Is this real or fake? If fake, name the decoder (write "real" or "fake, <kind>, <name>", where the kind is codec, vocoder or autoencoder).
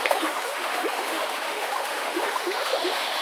fake, autoencoder, DAC-VAE